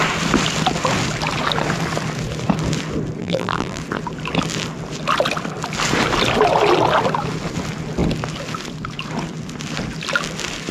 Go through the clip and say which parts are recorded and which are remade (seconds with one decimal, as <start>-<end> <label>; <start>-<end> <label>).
0.0-3.2 recorded; 3.2-3.8 remade; 3.8-10.7 recorded